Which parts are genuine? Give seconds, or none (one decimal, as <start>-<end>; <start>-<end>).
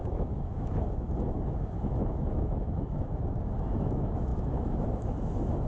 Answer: none